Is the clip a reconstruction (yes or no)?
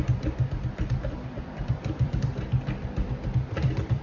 yes